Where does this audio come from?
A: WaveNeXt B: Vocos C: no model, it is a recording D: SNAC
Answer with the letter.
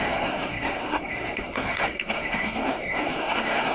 D